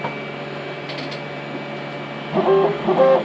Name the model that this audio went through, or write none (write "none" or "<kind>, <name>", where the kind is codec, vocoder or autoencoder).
none